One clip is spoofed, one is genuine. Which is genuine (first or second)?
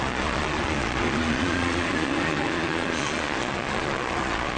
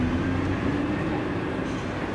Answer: second